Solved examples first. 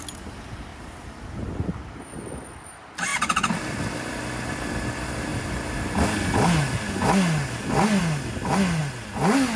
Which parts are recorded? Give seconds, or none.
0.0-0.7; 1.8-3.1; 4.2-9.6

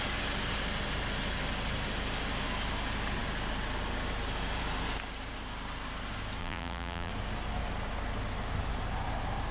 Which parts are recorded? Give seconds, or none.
0.0-6.4; 7.1-9.5

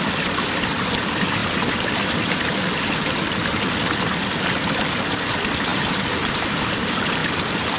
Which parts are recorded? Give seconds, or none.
0.0-1.4; 2.4-5.7; 6.8-7.8

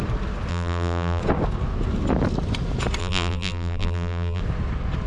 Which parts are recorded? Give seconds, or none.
0.0-0.5; 1.2-3.0; 4.4-5.1